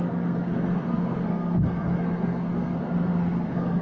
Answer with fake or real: fake